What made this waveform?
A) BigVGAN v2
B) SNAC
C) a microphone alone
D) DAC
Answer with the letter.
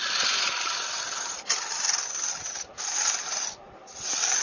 C